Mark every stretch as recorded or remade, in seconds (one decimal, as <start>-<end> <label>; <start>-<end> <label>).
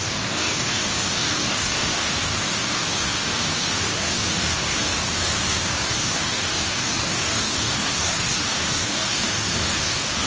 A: 0.0-10.3 remade